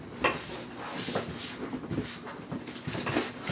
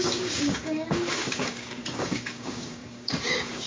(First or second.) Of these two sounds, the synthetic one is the second